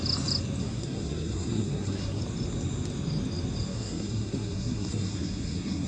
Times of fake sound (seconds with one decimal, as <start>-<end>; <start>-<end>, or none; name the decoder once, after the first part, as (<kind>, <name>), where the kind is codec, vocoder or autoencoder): 0.6-2.2 (codec, SNAC); 3.7-5.9